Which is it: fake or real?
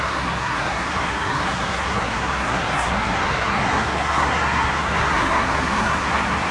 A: fake